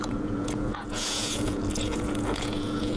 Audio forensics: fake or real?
fake